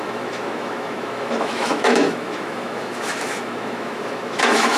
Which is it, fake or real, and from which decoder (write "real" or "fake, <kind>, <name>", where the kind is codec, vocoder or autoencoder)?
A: fake, autoencoder, DAC-VAE